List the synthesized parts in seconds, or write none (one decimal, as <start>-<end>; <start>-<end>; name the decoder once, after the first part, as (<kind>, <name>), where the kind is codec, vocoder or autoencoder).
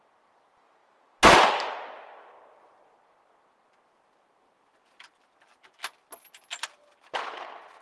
none